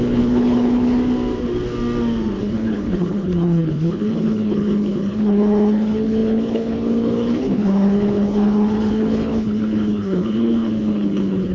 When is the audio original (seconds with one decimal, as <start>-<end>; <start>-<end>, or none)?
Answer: 1.0-2.4